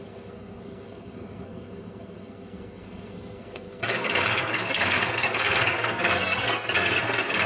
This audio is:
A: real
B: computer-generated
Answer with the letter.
B